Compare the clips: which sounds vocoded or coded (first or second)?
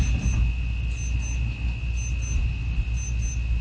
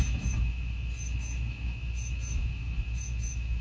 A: second